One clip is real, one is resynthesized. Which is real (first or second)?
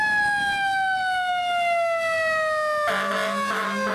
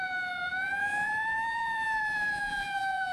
first